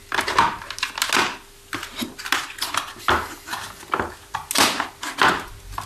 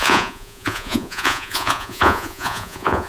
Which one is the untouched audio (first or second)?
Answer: first